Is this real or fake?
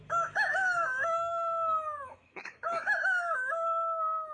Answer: fake